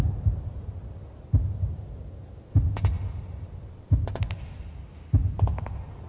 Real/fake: real